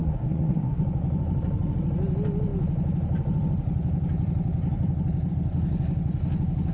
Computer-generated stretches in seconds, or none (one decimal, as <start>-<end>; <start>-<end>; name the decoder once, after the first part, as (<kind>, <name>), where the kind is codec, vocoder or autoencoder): 0.0-0.8 (codec, SNAC)